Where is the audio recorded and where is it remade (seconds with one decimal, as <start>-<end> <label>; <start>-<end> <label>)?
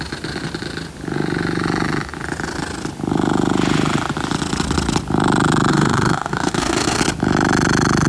0.0-5.7 recorded; 5.7-7.0 remade; 7.0-8.1 recorded